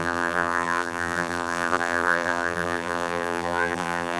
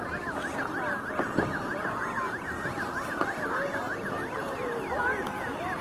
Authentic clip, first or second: second